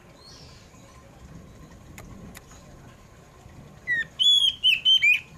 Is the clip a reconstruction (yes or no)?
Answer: no